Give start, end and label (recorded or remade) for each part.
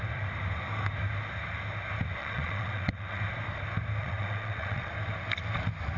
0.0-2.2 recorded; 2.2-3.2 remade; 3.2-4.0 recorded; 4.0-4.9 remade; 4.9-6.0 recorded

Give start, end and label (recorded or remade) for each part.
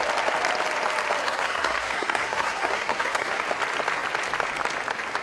0.0-1.2 recorded; 1.2-3.4 remade; 3.4-5.2 recorded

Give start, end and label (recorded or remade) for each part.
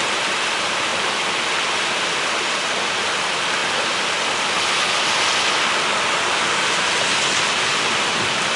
0.0-8.6 recorded